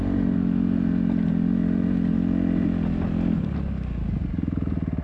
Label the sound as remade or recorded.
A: recorded